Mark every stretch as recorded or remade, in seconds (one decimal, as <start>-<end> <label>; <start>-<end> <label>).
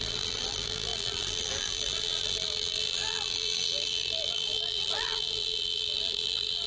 0.0-6.7 remade